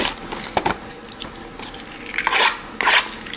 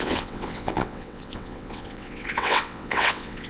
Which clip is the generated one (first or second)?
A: second